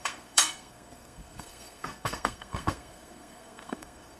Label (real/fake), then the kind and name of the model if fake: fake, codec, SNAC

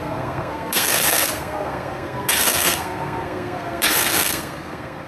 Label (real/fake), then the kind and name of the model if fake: fake, codec, SNAC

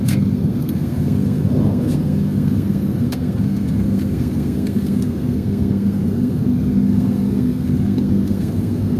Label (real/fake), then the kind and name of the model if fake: fake, codec, SNAC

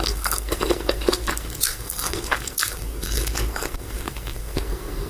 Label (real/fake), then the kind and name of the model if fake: fake, codec, SNAC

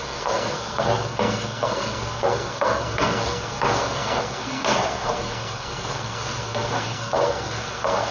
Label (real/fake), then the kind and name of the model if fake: fake, codec, SNAC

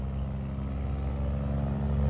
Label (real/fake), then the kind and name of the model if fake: real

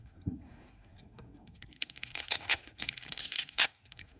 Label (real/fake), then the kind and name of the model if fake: fake, codec, SNAC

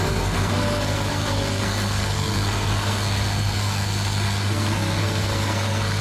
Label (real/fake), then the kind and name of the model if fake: fake, codec, SNAC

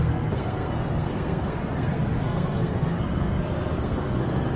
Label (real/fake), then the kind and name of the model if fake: fake, codec, SNAC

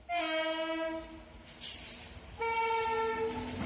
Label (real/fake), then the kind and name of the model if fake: real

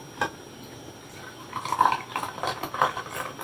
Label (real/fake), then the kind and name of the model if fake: real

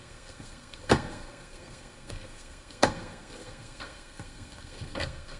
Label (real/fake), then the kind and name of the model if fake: fake, codec, SNAC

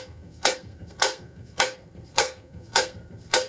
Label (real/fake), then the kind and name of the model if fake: fake, codec, SNAC